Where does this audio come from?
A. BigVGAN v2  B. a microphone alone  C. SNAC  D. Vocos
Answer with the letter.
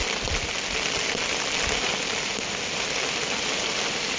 B